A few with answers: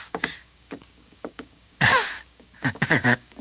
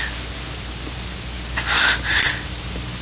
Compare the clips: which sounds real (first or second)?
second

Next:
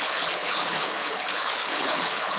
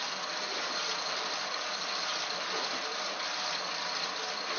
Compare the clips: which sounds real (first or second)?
second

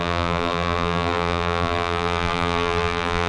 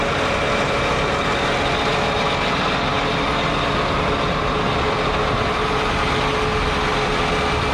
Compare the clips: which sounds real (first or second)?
second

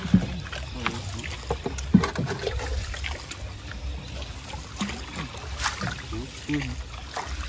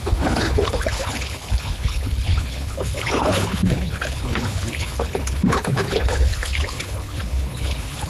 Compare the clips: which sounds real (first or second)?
first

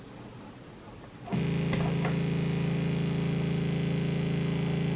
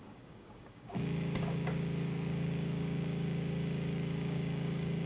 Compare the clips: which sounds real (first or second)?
first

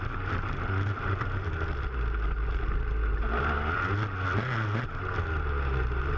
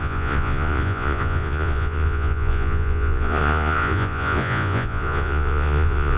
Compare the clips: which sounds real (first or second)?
first